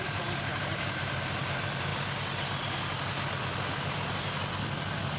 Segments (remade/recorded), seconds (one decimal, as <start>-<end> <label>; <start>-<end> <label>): 0.0-1.9 remade; 1.9-5.2 recorded